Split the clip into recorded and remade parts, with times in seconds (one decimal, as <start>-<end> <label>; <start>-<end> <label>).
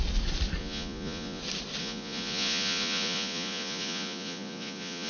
0.0-0.6 recorded; 0.6-1.4 remade; 1.4-1.8 recorded; 1.8-5.1 remade